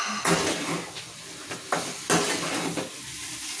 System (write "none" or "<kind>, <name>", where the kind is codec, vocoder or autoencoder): none